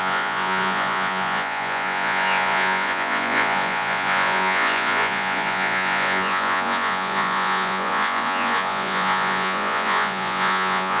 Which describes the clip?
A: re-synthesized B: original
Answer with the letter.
A